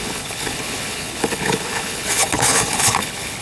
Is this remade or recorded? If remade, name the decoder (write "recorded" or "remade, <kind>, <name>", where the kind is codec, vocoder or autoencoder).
remade, codec, HILCodec